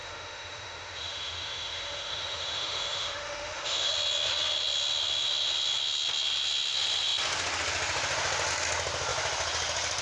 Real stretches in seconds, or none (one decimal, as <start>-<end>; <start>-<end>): 3.9-10.0